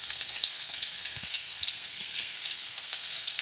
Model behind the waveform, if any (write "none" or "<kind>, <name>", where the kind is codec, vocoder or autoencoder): codec, SNAC